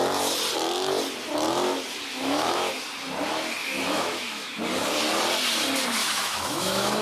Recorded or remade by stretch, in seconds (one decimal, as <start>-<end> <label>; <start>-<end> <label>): 0.0-2.1 recorded; 2.1-2.7 remade; 2.7-3.6 recorded; 3.6-4.6 remade; 4.6-6.0 recorded; 6.0-7.0 remade